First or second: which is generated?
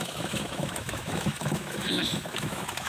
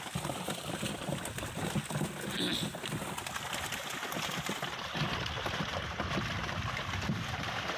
first